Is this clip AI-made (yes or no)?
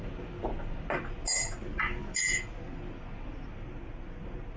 no